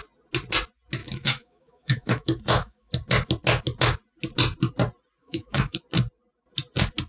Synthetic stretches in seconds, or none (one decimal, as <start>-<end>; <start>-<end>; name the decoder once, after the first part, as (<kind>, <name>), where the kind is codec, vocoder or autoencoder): 1.0-2.9 (autoencoder, DAC-VAE); 5.2-5.8